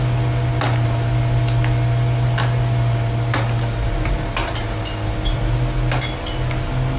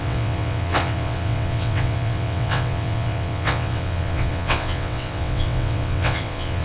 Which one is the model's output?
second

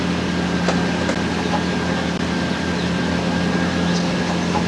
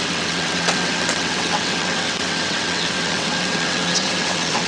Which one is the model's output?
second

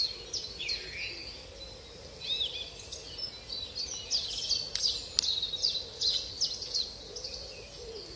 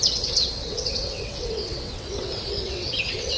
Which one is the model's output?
second